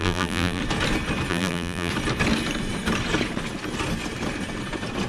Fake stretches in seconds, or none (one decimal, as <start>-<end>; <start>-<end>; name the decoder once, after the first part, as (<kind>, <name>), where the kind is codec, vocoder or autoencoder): 0.0-0.6 (vocoder, BigVGAN v2); 1.3-1.9